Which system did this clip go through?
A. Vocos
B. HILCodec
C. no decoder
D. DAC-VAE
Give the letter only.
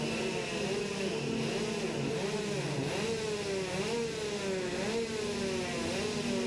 C